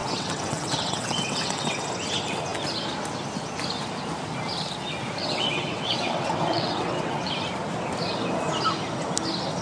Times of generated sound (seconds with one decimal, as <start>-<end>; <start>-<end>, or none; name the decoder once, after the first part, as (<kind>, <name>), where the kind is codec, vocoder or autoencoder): 0.0-1.8 (vocoder, WaveNeXt); 5.2-7.3